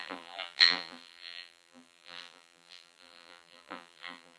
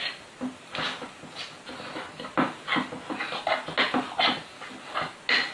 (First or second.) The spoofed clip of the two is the first